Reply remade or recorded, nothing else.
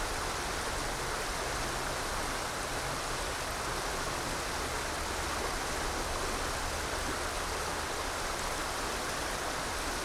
recorded